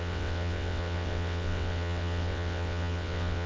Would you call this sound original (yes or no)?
no